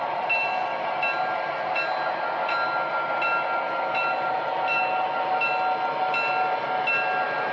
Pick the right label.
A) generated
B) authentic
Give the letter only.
B